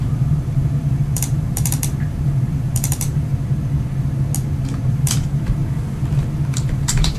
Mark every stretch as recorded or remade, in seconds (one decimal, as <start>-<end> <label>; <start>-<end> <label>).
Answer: 0.0-3.3 remade; 3.3-4.9 recorded; 4.9-5.6 remade; 5.6-6.5 recorded; 6.5-7.2 remade